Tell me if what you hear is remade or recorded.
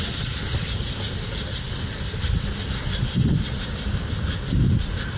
recorded